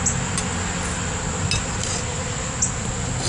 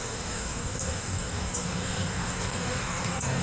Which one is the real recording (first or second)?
first